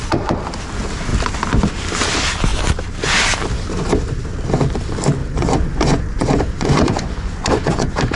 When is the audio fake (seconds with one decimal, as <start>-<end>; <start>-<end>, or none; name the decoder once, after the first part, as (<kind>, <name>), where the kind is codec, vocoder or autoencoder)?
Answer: 5.2-8.2 (vocoder, Vocos)